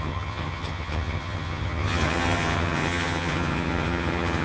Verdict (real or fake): fake